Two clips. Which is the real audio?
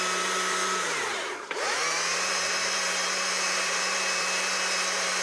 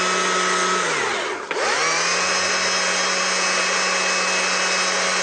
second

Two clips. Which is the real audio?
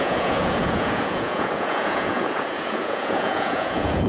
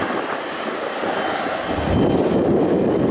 second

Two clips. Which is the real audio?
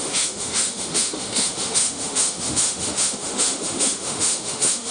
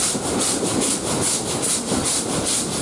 second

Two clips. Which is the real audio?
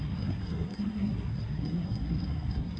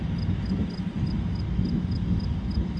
second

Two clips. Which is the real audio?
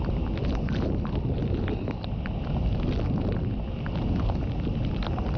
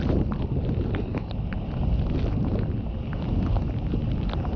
first